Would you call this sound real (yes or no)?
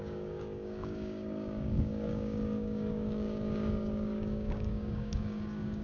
no